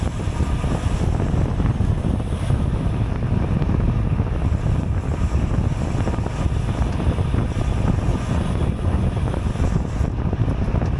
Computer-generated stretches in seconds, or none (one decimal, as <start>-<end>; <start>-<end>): 8.1-9.5